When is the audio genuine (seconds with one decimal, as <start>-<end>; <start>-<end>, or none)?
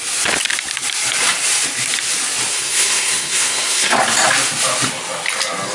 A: 0.0-2.5; 3.9-5.7